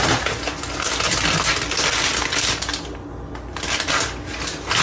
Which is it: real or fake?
real